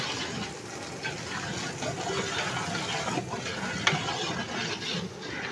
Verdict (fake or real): real